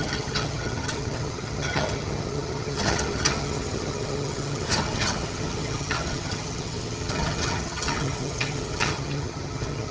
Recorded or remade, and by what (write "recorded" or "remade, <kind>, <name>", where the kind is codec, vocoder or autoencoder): remade, vocoder, HiFi-GAN